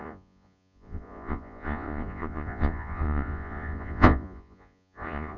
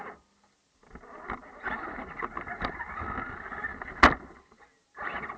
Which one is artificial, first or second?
first